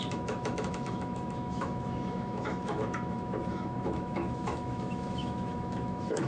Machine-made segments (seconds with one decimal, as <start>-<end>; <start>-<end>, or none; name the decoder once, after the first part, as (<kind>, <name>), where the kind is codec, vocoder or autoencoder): 0.0-6.3 (autoencoder, DAC-VAE)